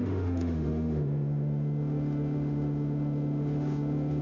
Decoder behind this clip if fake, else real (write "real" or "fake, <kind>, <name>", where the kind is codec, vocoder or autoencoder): fake, autoencoder, DAC-VAE